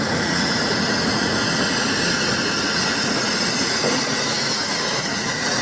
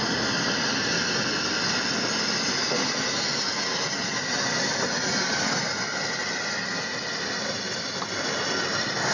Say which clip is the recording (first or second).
second